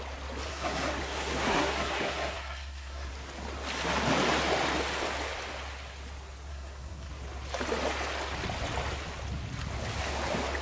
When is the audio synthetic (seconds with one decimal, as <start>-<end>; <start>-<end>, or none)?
0.5-3.1; 6.5-7.1